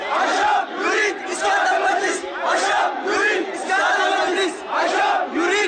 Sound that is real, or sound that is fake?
real